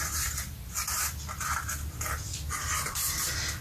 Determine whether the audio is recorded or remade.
recorded